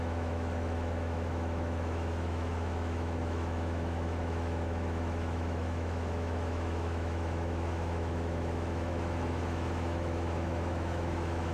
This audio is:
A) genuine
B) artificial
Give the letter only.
B